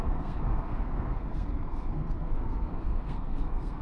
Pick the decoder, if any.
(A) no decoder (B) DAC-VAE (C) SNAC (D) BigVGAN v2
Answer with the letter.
C